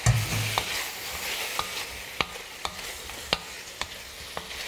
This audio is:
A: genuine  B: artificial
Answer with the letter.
A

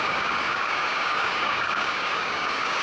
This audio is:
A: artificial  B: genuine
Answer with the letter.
A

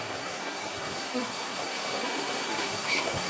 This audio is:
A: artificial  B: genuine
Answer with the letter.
A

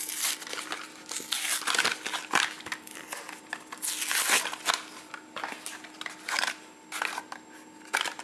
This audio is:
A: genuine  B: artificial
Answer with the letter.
A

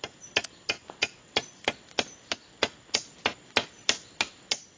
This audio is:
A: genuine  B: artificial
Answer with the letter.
A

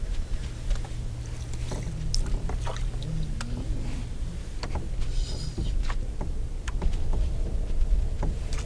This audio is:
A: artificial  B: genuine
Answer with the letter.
B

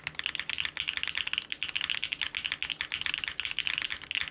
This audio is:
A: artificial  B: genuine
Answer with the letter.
B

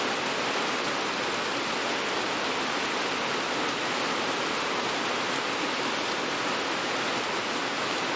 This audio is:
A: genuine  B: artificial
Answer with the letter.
A